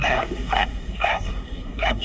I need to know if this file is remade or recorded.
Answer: remade